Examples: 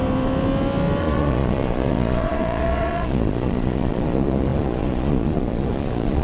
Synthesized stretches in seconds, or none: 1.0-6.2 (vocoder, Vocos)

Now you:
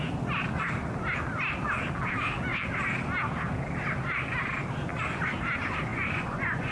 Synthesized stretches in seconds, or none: 5.9-6.7 (vocoder, Vocos)